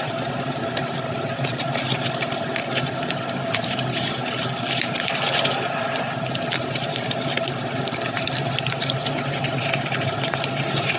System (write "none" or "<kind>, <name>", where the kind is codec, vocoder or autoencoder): none